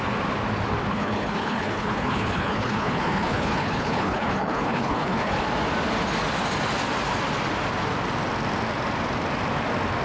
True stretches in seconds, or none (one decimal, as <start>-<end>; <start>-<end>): 0.0-0.9; 5.4-10.0